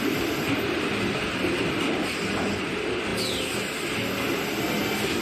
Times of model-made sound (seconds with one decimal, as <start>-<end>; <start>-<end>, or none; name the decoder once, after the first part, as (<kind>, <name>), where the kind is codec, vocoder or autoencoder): none